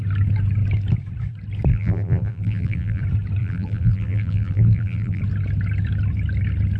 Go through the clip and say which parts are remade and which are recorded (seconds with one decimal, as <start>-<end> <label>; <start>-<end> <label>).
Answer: 0.0-1.7 recorded; 1.7-3.0 remade; 3.0-3.4 recorded; 3.4-5.2 remade; 5.2-6.8 recorded